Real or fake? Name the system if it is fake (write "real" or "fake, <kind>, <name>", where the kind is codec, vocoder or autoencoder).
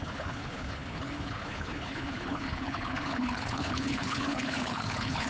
fake, codec, HILCodec